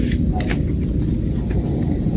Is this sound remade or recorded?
remade